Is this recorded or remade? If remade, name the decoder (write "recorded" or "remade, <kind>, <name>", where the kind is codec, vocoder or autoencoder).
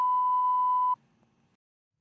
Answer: recorded